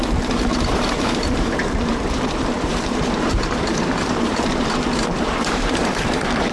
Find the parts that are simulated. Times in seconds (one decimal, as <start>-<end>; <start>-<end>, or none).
0.0-6.5